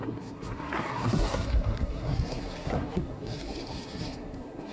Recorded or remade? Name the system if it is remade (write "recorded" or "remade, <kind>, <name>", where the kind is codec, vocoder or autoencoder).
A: remade, codec, SNAC